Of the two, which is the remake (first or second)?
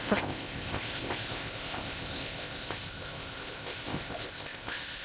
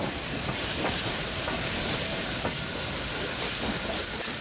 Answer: first